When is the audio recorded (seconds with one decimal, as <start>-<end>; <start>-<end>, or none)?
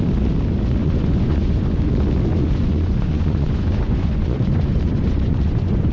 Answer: 0.0-0.8; 1.9-2.3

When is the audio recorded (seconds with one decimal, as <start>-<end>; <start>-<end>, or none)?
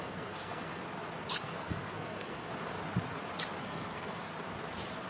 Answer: 0.8-1.4; 2.5-3.6; 4.3-5.1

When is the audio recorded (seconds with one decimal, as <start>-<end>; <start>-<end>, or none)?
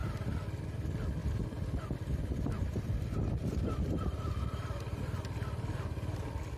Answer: 0.0-1.2; 3.6-6.6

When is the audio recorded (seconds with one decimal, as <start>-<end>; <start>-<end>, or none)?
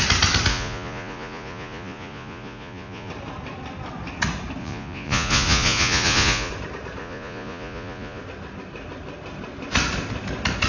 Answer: 0.0-0.5; 3.1-4.6; 6.5-7.0; 8.2-10.7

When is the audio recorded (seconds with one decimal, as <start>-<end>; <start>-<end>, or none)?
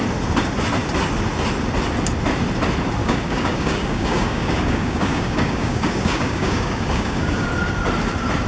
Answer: 0.0-3.0; 7.5-8.5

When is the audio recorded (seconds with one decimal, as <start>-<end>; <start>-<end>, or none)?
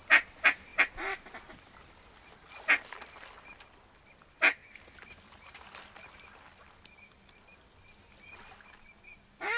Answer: 0.0-9.6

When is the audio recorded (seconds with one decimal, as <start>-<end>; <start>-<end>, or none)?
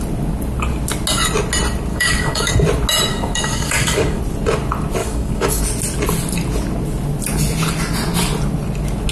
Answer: 0.0-1.9; 2.5-3.1; 4.2-5.0; 5.6-9.1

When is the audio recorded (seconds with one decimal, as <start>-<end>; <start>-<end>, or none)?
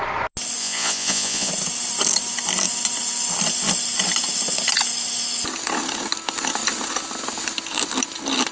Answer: 0.0-0.6; 1.5-8.5